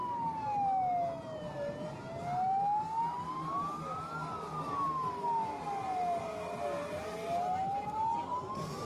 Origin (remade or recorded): recorded